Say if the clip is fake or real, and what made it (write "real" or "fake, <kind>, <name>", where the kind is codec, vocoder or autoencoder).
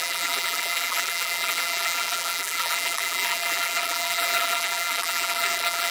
fake, vocoder, BigVGAN v2